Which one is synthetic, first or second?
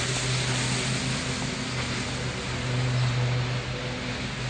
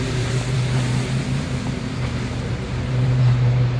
second